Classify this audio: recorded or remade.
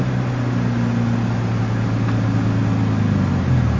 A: recorded